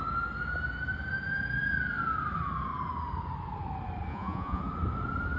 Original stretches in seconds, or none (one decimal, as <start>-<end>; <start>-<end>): 0.0-4.1; 4.6-5.4